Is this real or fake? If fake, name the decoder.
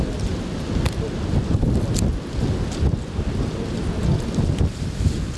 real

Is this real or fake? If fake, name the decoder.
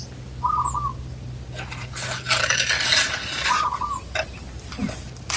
real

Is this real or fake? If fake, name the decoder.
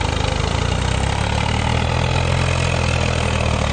real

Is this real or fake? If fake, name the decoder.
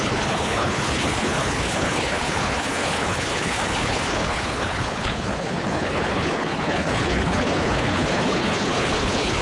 fake, codec, HILCodec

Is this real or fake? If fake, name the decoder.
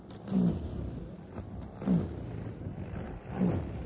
real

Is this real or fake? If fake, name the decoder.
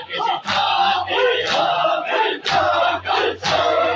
real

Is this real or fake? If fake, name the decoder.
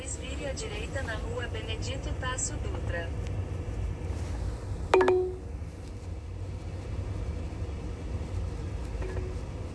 real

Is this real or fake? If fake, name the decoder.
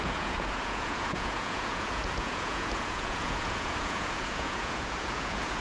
fake, vocoder, Vocos